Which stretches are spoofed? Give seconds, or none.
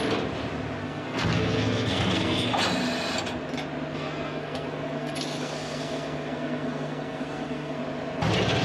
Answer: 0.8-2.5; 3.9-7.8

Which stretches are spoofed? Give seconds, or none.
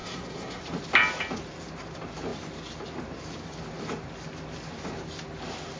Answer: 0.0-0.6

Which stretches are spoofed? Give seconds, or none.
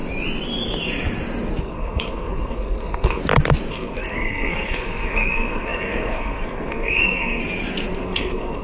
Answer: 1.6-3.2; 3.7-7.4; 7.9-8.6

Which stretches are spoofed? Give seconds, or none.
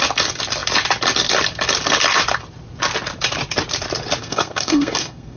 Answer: 4.2-5.4